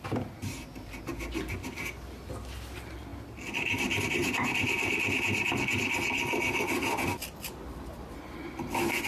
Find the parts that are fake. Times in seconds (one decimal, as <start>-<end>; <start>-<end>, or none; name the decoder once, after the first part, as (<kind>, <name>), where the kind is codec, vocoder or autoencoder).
none

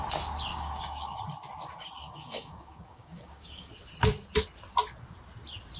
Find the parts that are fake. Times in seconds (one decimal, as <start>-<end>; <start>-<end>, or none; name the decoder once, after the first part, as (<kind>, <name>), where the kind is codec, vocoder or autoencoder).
0.5-1.2 (codec, DAC); 2.0-3.7

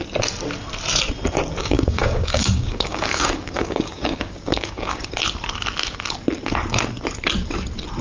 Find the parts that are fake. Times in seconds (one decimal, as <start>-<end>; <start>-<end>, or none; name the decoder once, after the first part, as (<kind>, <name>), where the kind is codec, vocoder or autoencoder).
1.6-5.1 (codec, DAC)

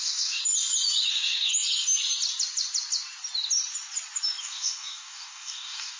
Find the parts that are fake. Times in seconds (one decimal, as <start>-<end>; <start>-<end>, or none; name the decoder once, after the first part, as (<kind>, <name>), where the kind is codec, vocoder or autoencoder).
0.0-0.4 (codec, DAC); 1.1-1.5; 4.4-6.0

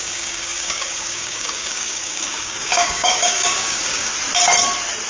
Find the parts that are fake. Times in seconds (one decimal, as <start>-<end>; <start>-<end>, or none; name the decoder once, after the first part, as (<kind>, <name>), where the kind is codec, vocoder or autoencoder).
0.0-4.1 (codec, DAC)

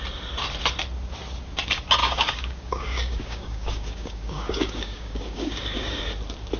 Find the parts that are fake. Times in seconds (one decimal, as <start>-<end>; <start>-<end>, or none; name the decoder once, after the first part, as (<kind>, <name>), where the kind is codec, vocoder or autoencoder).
2.0-6.0 (codec, DAC)

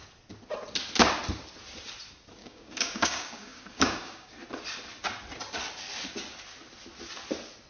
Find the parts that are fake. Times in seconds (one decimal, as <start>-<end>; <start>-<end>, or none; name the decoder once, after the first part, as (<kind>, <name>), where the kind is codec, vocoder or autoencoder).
2.4-4.3 (codec, DAC)

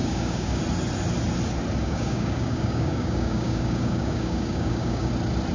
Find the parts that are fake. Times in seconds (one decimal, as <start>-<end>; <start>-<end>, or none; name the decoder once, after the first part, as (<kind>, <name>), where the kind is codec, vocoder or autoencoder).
0.0-0.6 (codec, DAC); 1.8-5.1